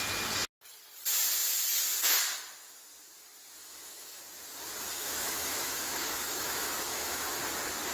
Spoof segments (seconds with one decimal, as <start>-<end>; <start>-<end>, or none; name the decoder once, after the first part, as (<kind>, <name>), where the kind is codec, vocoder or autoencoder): 3.6-4.2 (autoencoder, DAC-VAE); 4.9-7.4